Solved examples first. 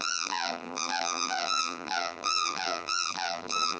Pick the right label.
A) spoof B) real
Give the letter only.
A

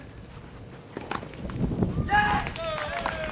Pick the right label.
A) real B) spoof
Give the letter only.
A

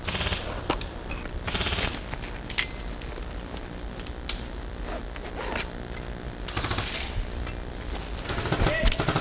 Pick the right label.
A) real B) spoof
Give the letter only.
A